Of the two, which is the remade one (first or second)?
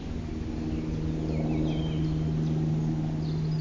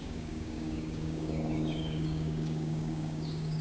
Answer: second